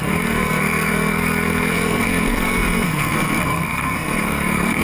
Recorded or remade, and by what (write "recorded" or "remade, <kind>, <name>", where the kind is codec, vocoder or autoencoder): remade, codec, SNAC